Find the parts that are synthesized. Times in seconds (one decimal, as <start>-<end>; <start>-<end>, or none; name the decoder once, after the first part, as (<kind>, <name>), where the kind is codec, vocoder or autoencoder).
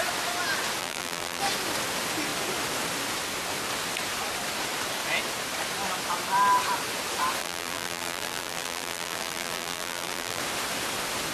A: 0.8-1.4 (vocoder, BigVGAN v2); 7.4-10.4